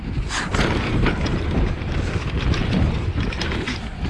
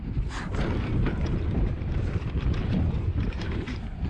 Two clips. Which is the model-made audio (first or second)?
second